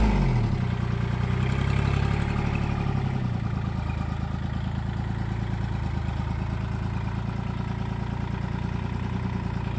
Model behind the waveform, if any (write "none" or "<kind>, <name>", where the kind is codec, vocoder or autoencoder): none